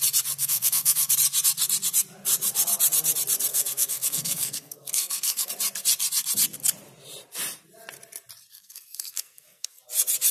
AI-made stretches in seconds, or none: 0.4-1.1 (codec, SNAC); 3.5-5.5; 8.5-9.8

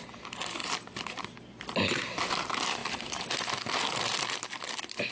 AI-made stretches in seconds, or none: 0.0-0.6 (vocoder, BigVGAN v2); 1.7-2.8

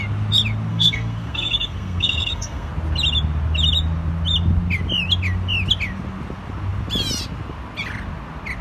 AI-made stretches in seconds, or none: 0.7-2.7 (codec, SNAC)

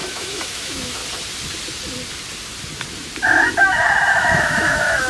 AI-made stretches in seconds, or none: 0.0-1.0 (autoencoder, DAC-VAE); 4.1-5.1

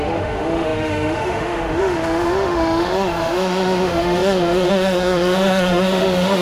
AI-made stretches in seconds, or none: 0.0-6.4 (autoencoder, DAC-VAE)